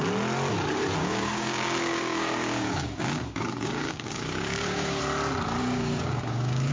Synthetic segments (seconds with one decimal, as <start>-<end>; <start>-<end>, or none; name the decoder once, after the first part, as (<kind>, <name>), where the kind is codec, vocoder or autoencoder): 1.0-5.0 (codec, DAC); 5.6-6.7